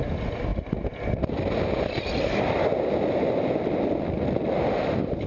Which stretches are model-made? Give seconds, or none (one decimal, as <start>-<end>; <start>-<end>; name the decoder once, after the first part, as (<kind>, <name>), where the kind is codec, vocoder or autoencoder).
none